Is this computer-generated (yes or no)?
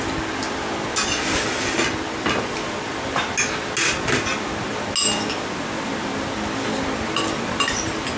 no